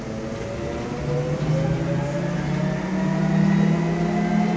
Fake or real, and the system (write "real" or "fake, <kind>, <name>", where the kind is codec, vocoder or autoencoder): real